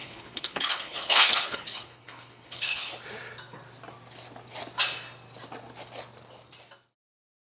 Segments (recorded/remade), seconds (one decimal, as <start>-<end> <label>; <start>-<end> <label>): 0.0-2.9 remade; 2.9-7.5 recorded